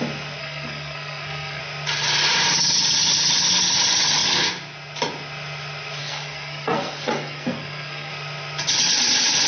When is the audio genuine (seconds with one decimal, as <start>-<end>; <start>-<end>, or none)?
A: 0.0-0.4; 1.6-6.0; 8.1-9.5